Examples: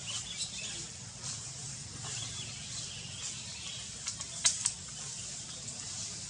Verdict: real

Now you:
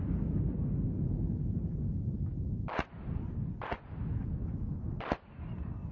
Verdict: real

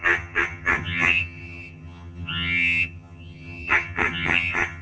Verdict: fake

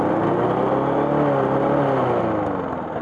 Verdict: real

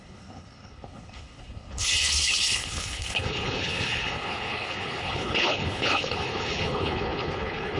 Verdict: fake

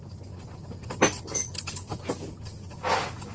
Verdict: real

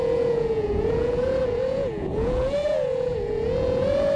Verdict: fake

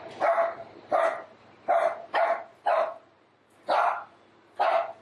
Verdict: real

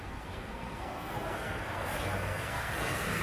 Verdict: fake